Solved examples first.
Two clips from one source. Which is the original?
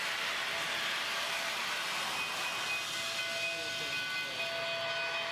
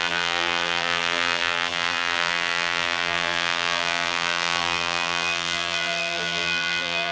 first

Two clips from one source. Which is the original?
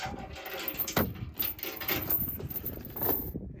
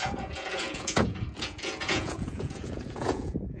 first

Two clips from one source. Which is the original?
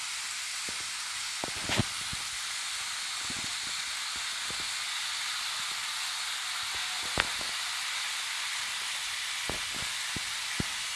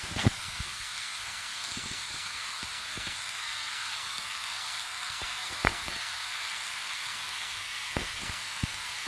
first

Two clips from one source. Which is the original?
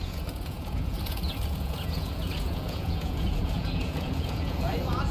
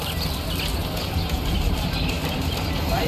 second